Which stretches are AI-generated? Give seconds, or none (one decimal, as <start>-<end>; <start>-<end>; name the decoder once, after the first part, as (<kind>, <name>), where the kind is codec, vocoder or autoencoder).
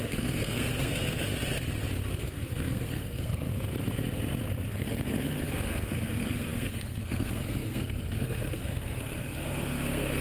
0.0-1.3 (codec, SNAC); 2.2-3.5; 4.7-10.2